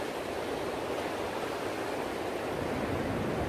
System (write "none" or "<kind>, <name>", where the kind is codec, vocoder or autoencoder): none